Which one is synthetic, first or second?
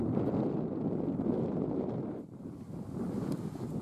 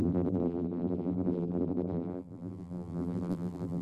second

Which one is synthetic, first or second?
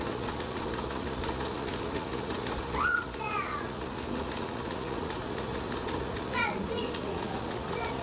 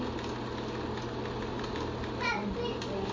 first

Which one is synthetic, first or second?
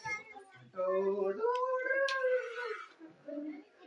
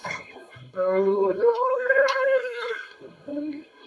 second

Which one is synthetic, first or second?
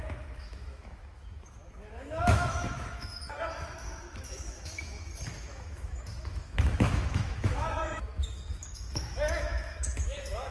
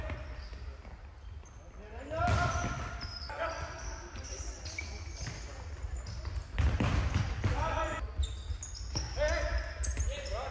first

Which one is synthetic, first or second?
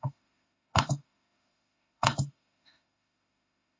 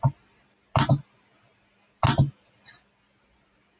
first